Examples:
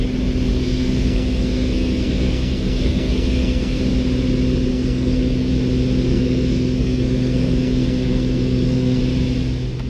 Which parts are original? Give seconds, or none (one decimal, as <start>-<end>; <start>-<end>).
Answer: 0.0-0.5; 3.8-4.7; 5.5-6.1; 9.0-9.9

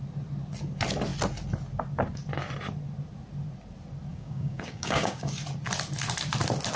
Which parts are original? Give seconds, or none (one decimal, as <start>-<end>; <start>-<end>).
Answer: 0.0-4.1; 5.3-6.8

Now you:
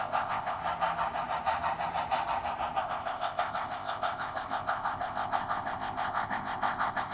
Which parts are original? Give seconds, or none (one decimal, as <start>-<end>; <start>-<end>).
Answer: 0.6-2.8